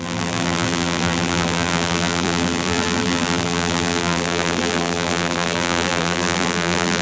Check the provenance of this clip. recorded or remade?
remade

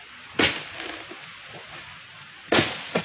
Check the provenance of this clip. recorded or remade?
recorded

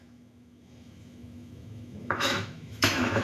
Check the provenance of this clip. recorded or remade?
remade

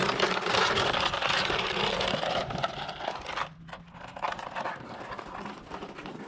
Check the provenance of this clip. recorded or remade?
recorded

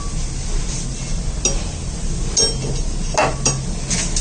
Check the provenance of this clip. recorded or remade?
recorded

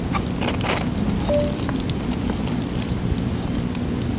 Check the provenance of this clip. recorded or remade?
recorded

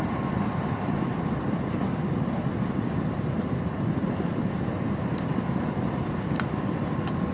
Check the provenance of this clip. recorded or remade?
recorded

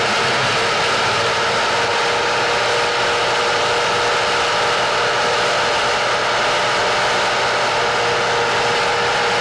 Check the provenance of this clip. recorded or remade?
recorded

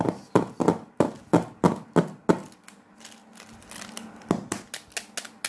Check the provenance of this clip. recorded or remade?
recorded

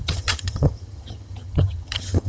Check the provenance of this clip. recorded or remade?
remade